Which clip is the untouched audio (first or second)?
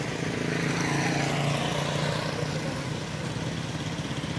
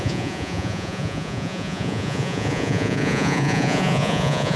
first